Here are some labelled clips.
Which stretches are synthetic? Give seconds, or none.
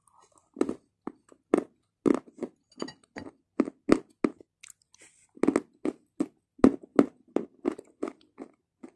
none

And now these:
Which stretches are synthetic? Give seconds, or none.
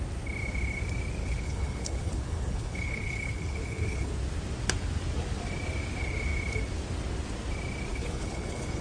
1.2-4.1 (codec, HILCodec); 7.9-8.8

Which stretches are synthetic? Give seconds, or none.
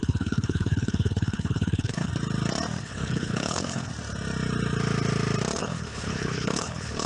0.0-2.1 (codec, HILCodec); 2.8-3.9; 5.6-7.1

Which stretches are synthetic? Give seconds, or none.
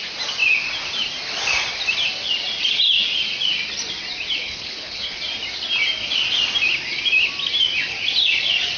4.4-5.2 (codec, HILCodec)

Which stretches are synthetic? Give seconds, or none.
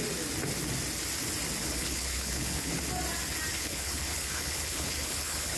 1.6-2.8 (codec, HILCodec); 3.5-5.6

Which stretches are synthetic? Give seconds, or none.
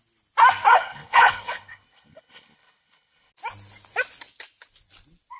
0.7-3.3 (codec, HILCodec)